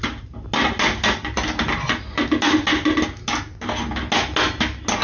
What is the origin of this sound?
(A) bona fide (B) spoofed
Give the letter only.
A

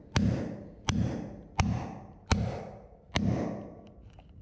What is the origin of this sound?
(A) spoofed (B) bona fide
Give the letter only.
B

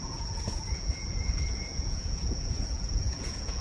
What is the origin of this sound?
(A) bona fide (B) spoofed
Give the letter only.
B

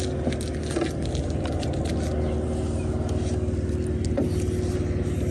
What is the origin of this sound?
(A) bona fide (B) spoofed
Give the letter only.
A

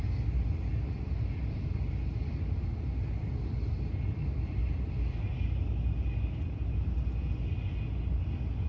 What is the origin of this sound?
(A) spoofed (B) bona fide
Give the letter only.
B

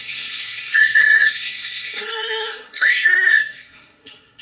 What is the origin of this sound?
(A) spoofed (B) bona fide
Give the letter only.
A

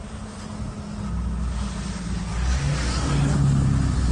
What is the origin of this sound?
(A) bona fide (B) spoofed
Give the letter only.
A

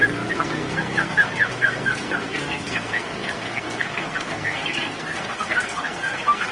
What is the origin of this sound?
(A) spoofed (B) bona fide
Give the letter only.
A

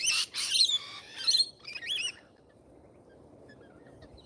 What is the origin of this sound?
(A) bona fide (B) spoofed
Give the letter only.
B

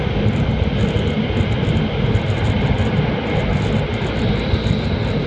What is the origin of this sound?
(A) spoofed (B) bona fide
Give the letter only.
B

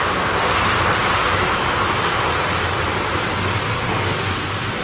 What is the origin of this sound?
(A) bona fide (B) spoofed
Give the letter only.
A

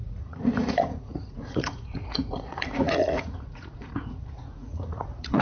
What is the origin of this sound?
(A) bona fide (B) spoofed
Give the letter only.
B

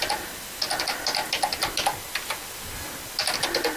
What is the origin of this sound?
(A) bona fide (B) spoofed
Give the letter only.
A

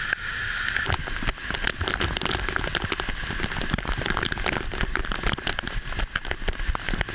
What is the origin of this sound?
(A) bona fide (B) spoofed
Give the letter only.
A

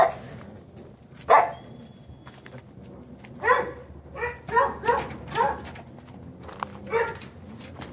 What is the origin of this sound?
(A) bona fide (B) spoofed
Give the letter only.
A